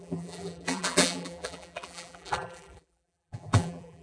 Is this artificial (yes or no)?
yes